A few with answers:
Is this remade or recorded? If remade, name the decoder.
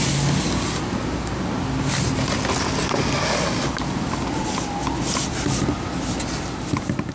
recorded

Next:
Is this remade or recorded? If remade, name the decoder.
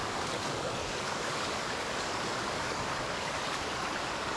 remade, codec, DAC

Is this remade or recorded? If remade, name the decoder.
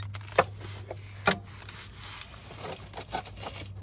recorded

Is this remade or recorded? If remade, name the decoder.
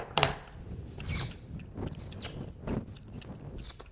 recorded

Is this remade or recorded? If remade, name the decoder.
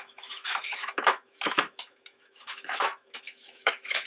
remade, autoencoder, DAC-VAE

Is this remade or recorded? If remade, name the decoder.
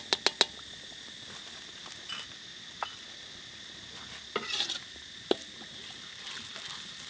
recorded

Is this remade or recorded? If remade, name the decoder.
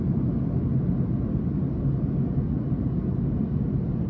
recorded